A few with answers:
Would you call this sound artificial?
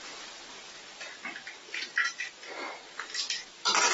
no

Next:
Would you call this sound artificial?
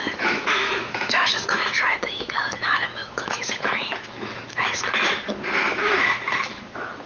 yes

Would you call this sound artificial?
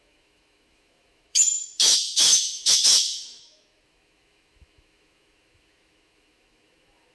yes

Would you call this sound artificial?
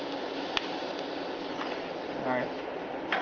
no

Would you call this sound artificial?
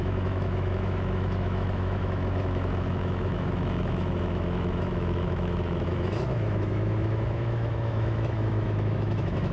yes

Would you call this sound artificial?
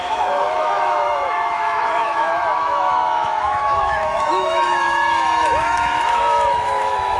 yes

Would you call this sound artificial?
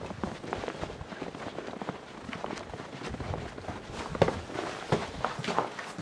no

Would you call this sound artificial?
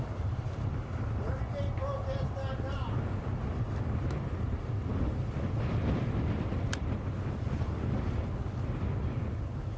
no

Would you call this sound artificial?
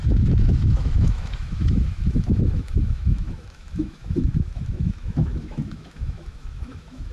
yes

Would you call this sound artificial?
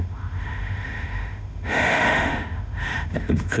yes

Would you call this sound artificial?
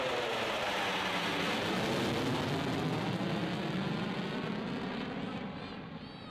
no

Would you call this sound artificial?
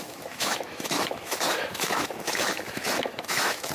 yes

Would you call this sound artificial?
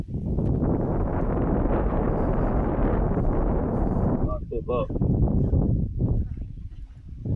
no